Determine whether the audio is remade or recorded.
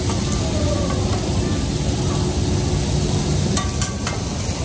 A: recorded